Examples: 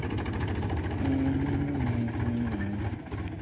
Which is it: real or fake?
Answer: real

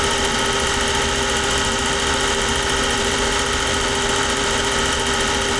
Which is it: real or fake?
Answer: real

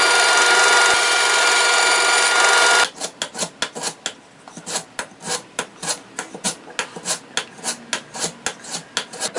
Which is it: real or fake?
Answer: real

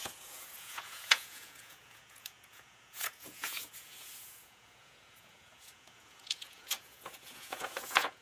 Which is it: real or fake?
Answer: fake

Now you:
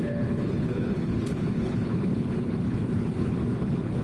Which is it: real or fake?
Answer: fake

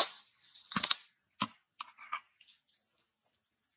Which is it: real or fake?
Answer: real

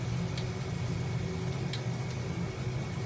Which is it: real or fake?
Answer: real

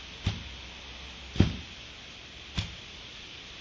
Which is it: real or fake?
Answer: real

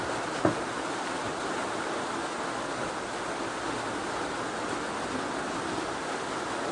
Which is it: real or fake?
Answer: real